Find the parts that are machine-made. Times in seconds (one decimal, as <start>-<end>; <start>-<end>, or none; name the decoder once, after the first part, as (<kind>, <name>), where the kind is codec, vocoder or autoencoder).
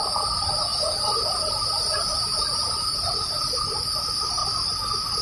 0.7-3.8 (vocoder, BigVGAN v2); 4.4-5.2